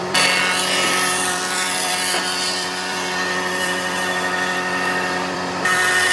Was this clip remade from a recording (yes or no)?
yes